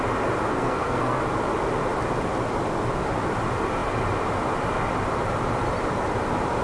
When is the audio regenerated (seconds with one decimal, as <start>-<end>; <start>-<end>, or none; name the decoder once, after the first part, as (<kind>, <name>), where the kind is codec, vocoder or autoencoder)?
0.5-1.2 (codec, SNAC)